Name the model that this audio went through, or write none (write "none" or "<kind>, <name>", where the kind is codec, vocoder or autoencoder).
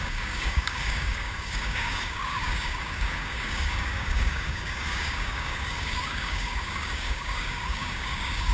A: codec, DAC